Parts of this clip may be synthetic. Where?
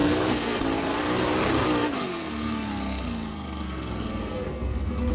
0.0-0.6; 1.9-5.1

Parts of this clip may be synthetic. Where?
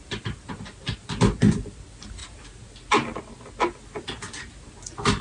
none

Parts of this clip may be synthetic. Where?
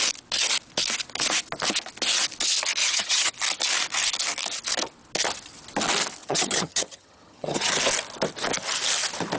2.8-3.3; 6.2-7.7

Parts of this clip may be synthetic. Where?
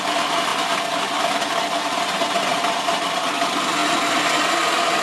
none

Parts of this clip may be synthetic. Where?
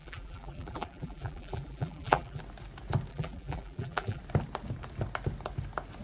0.0-2.4; 3.1-4.2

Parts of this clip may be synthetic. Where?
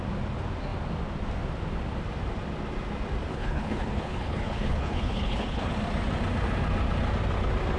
3.3-5.7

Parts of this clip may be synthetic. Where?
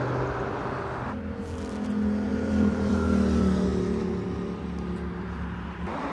2.3-2.9